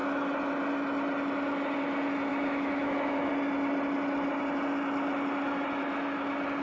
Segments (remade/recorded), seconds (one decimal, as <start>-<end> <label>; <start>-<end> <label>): 0.0-2.3 recorded; 2.3-3.3 remade; 3.3-6.6 recorded